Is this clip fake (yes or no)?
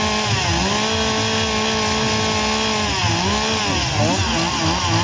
no